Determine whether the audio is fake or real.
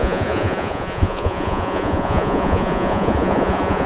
fake